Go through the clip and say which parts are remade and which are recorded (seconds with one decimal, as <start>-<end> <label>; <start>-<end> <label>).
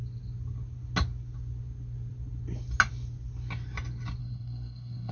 0.0-4.2 recorded; 4.2-5.1 remade